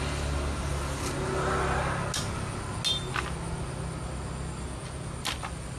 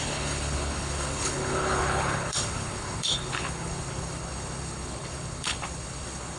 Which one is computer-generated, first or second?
second